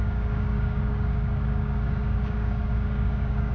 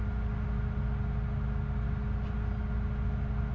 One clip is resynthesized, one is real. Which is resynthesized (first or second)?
first